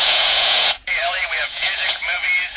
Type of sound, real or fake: fake